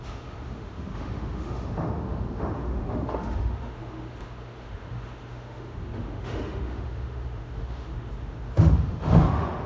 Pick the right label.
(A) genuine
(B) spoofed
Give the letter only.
B